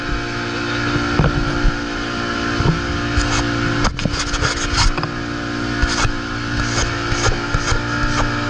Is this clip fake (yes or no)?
no